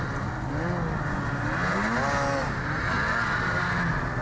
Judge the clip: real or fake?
real